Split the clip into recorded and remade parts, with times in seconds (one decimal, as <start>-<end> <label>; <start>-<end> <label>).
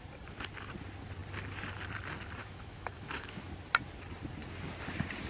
0.0-2.4 recorded; 2.4-3.5 remade; 3.5-5.3 recorded